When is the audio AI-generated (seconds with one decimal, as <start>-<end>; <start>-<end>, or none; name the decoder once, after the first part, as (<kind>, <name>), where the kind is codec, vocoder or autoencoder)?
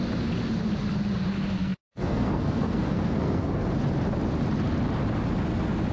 1.6-3.6 (codec, SNAC)